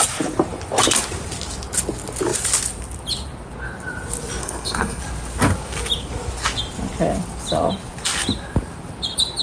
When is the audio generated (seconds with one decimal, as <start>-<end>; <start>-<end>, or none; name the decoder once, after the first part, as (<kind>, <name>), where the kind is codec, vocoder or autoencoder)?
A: 4.4-5.0 (codec, SNAC)